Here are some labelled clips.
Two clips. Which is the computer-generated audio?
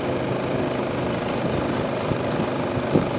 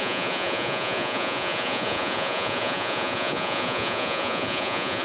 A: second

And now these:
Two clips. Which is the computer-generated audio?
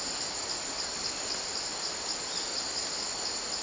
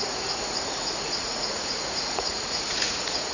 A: second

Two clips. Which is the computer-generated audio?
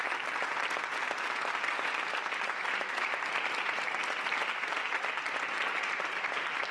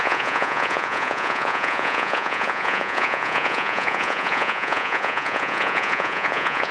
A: second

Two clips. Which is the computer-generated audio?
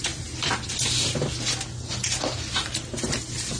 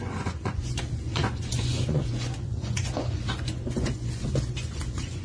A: second